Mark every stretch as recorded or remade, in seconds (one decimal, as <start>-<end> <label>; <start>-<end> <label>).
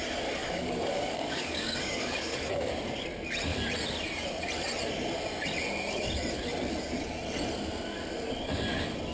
0.0-0.4 recorded; 0.4-2.7 remade; 2.7-9.1 recorded